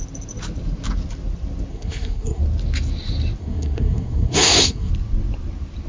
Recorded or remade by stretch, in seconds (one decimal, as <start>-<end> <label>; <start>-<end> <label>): 0.0-1.7 recorded; 1.7-2.4 remade; 2.4-3.4 recorded; 3.4-4.9 remade; 4.9-5.9 recorded